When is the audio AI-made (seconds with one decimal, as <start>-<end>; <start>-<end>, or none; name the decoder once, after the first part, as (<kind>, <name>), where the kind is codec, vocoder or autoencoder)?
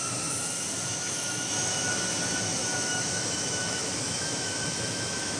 0.9-1.9 (autoencoder, DAC-VAE); 2.6-5.4